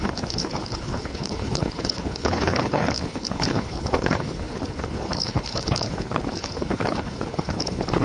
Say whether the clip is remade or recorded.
remade